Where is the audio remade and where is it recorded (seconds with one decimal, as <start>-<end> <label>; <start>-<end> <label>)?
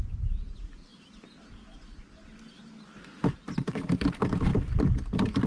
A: 0.0-0.9 remade; 0.9-3.7 recorded; 3.7-4.5 remade; 4.5-5.1 recorded; 5.1-5.5 remade